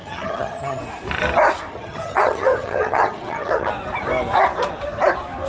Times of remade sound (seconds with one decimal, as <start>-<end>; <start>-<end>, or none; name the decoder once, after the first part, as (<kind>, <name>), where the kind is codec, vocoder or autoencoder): 0.0-0.8 (vocoder, HiFi-GAN); 1.7-3.7